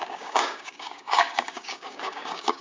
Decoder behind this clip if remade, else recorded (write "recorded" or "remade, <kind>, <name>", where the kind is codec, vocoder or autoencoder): remade, codec, DAC